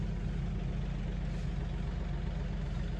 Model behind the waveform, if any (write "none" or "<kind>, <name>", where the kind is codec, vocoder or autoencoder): none